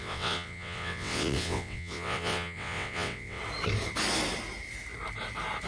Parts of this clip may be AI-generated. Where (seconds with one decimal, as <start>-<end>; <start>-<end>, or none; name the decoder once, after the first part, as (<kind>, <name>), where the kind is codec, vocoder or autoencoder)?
0.0-3.4 (vocoder, WaveNeXt)